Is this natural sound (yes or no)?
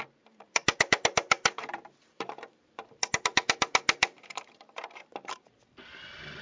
no